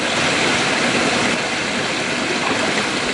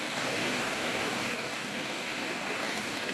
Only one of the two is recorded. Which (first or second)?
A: first